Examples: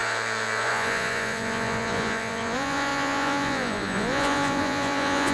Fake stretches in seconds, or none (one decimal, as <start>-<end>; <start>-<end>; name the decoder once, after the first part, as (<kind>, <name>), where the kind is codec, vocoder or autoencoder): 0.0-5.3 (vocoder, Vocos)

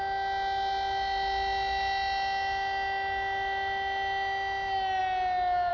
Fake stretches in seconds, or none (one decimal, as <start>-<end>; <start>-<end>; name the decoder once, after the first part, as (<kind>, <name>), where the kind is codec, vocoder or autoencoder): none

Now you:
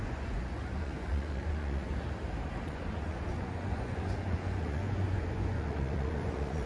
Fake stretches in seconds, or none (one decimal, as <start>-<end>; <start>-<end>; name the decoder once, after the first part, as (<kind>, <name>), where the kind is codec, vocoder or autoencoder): 0.0-1.9 (vocoder, Vocos); 2.7-6.7

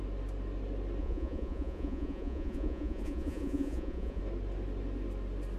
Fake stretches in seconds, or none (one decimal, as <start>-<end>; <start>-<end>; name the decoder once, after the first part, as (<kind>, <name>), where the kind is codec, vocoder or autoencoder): 1.0-4.2 (vocoder, Vocos)

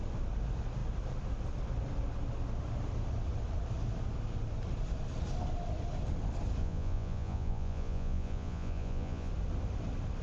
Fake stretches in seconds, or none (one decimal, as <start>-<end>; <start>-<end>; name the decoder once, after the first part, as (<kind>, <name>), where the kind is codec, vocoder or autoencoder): 6.6-9.3 (vocoder, Vocos)